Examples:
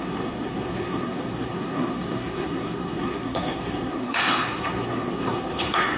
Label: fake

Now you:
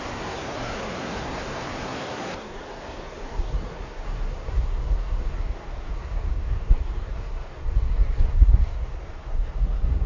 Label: fake